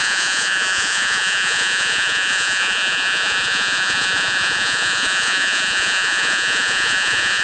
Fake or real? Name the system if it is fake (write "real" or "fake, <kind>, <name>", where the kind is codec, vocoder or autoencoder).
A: fake, vocoder, Vocos